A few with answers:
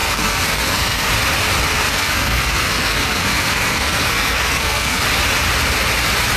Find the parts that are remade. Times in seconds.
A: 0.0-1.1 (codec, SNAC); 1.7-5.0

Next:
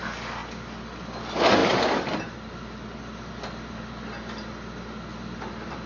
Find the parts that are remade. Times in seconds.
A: none